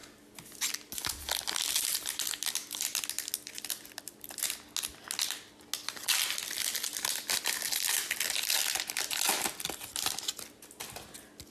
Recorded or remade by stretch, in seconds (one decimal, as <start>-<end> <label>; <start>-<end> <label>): 0.0-11.5 recorded